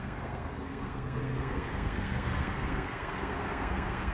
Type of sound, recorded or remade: remade